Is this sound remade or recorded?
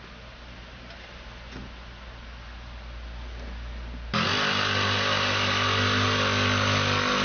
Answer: recorded